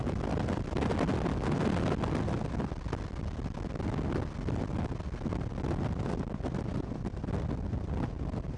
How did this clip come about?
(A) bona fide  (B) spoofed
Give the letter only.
A